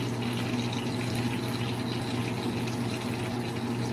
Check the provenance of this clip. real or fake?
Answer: real